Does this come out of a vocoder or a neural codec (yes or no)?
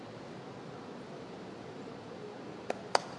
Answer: no